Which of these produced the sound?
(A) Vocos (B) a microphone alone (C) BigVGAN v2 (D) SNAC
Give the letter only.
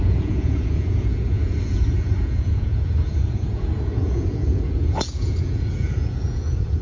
A